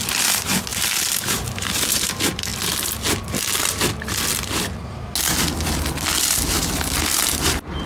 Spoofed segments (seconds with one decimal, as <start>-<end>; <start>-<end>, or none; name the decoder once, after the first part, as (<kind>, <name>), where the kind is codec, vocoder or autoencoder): 0.7-2.1 (vocoder, BigVGAN v2)